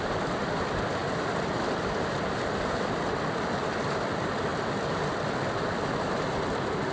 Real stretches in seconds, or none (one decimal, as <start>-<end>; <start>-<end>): 0.0-6.9